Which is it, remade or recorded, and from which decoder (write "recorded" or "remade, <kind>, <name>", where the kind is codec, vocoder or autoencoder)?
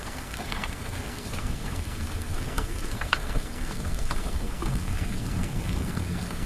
remade, codec, SNAC